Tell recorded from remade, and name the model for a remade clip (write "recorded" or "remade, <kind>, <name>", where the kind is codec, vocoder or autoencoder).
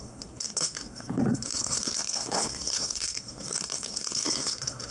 remade, codec, SNAC